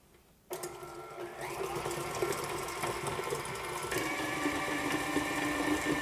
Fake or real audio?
real